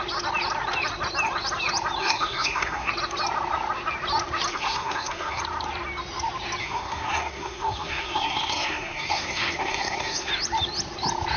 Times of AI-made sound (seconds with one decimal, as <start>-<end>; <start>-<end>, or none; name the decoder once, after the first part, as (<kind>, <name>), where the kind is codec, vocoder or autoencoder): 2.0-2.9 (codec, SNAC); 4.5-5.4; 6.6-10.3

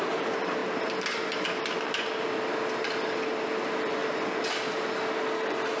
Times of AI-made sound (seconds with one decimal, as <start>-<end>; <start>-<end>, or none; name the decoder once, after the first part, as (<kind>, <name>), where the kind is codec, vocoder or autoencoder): none

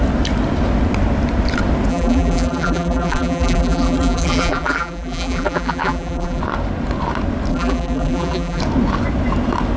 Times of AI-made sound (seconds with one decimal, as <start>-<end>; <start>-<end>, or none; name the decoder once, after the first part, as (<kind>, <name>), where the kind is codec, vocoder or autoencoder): 1.9-6.4 (vocoder, BigVGAN v2); 7.5-8.6